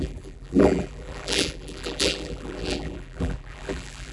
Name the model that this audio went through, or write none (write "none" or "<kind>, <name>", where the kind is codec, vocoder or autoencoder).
vocoder, BigVGAN v2